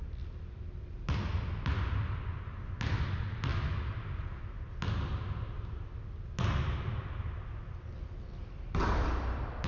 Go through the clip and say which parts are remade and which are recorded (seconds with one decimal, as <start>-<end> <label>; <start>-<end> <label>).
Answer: 0.0-9.7 recorded